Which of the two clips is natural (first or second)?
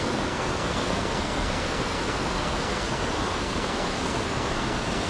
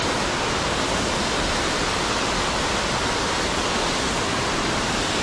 second